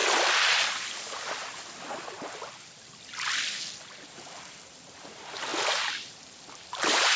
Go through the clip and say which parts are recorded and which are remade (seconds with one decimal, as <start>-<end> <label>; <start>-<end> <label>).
0.0-7.2 recorded

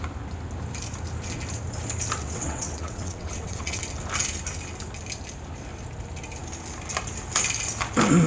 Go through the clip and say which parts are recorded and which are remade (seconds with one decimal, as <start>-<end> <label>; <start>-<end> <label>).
0.0-2.2 recorded; 2.2-3.8 remade; 3.8-8.3 recorded

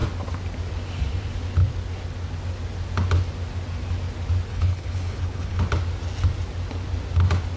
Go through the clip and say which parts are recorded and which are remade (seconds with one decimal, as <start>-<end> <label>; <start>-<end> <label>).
0.0-4.5 recorded; 4.5-5.6 remade; 5.6-7.6 recorded

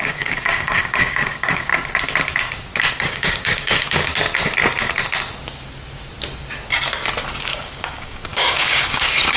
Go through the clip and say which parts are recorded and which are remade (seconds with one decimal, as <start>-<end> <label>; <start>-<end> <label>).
0.0-1.7 remade; 1.7-2.9 recorded; 2.9-4.1 remade; 4.1-7.4 recorded; 7.4-9.4 remade